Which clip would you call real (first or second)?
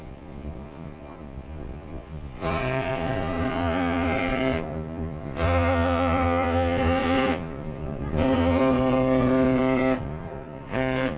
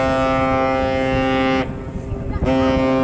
second